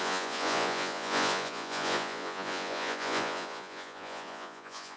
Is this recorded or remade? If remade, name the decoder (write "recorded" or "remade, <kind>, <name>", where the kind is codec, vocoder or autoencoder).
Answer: remade, vocoder, Vocos